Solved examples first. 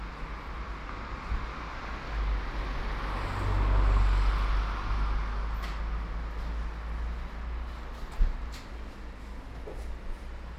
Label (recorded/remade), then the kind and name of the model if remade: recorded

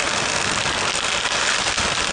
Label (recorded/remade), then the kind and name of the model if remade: recorded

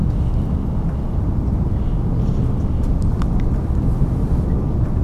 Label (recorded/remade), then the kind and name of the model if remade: recorded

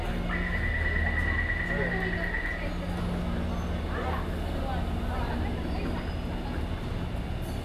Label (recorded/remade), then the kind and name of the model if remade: recorded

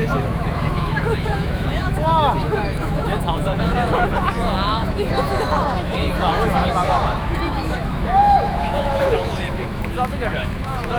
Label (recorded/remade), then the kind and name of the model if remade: remade, autoencoder, DAC-VAE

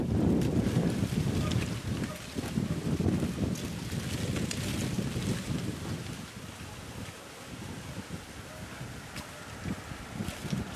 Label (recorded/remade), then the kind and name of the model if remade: recorded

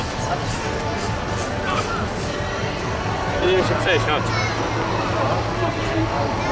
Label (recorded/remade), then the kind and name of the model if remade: recorded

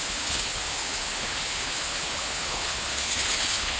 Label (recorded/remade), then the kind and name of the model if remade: remade, codec, HILCodec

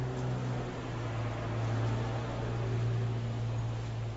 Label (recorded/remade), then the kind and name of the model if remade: recorded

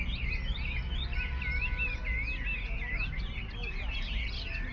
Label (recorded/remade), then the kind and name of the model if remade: recorded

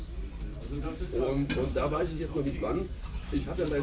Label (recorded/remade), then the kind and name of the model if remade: remade, vocoder, BigVGAN v2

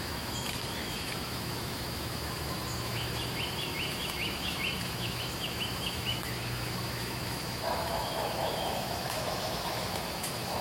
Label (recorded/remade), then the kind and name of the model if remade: remade, autoencoder, DAC-VAE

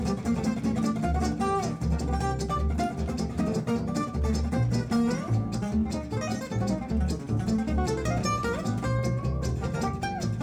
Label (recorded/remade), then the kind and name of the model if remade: recorded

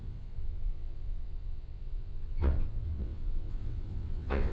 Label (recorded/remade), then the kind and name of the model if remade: remade, vocoder, WaveNeXt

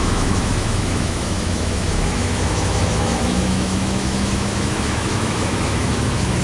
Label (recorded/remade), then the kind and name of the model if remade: remade, autoencoder, DAC-VAE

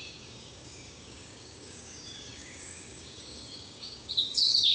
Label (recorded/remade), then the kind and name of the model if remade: remade, codec, DAC